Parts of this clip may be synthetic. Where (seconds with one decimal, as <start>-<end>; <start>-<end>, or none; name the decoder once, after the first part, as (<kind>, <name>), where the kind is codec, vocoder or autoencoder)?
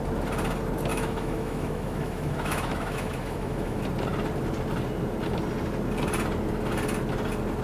0.9-3.8 (autoencoder, DAC-VAE)